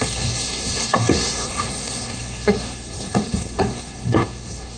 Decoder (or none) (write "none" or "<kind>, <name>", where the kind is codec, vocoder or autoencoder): codec, SNAC